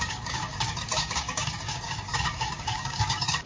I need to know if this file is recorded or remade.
remade